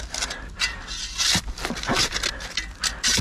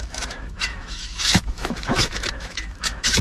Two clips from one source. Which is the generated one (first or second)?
second